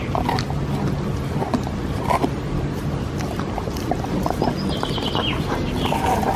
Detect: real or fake real